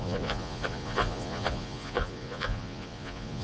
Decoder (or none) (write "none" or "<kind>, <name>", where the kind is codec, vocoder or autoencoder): vocoder, Vocos